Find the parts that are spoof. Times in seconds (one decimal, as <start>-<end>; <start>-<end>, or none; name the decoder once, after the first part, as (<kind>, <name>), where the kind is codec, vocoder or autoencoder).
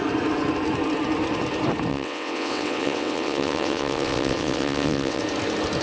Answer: 1.9-5.2 (vocoder, WaveNeXt)